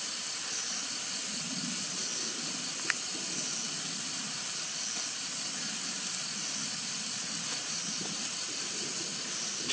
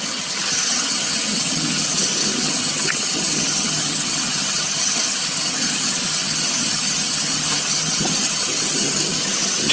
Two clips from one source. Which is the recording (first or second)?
first